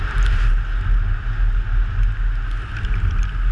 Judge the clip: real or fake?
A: real